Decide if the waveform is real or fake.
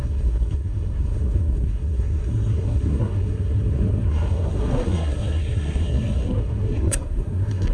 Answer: fake